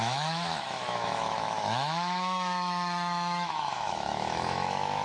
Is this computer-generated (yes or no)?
yes